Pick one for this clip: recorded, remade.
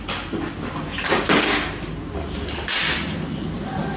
recorded